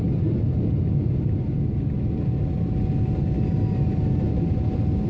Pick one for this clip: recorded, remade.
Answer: recorded